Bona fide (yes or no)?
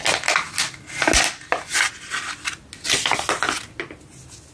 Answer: yes